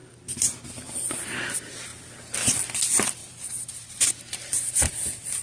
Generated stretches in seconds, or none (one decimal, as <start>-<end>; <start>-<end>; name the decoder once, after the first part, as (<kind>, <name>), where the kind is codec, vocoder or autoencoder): 3.2-4.9 (vocoder, BigVGAN v2)